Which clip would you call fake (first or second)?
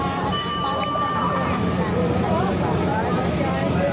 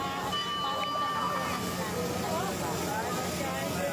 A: first